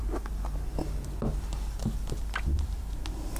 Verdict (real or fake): real